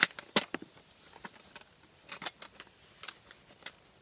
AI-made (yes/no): no